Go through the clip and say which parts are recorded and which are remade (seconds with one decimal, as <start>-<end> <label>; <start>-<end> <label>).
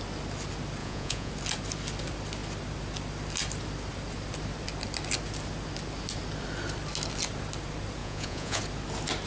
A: 0.0-0.8 recorded; 0.8-1.3 remade; 1.3-8.0 recorded; 8.0-8.6 remade; 8.6-9.3 recorded